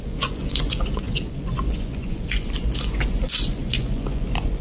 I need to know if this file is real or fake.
fake